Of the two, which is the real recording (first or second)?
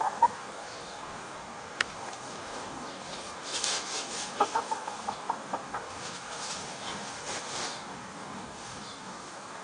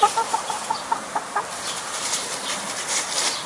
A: second